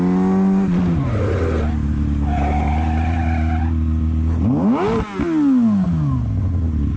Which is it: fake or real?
real